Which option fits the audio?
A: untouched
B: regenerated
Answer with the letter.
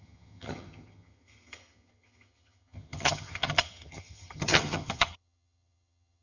B